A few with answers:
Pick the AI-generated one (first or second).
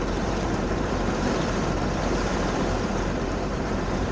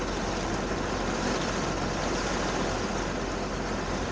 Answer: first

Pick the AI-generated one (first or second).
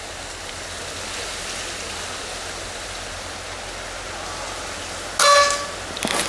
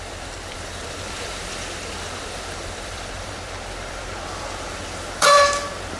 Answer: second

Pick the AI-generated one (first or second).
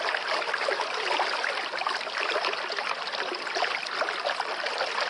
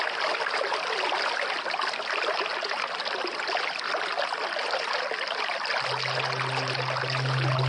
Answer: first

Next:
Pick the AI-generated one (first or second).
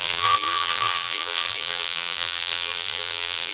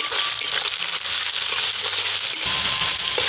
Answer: first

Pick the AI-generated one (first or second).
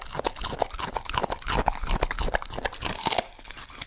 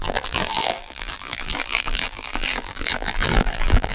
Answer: second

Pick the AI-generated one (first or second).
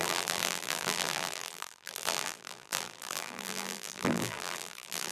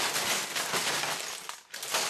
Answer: first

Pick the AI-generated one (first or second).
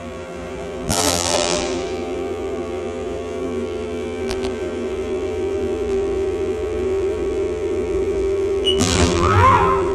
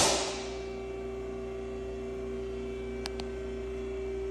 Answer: first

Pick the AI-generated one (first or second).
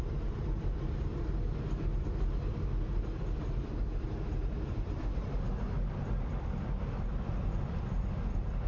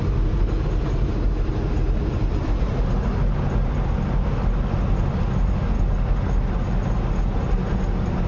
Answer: first